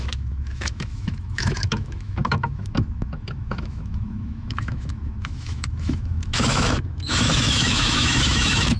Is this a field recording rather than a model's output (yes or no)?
no